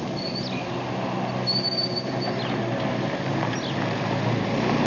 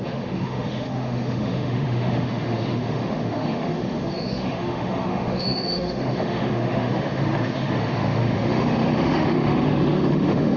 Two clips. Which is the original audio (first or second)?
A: first